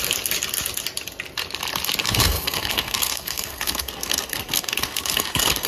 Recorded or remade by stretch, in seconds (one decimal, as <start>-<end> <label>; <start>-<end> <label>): 0.0-2.0 recorded; 2.0-5.7 remade